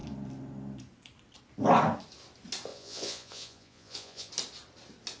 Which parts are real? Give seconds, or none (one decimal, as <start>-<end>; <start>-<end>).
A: 0.0-2.7; 4.3-5.2